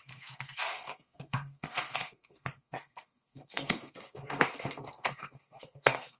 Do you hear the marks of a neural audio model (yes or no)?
yes